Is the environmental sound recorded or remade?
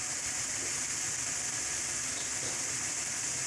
recorded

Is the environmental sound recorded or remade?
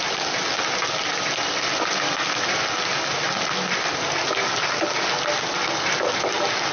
recorded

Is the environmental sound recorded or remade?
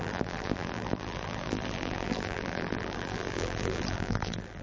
remade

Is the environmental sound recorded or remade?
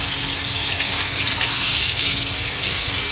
remade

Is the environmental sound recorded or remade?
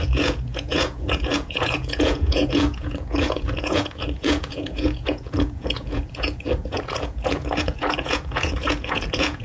remade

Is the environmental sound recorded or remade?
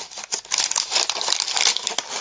recorded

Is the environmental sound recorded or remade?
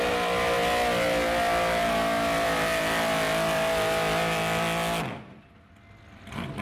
recorded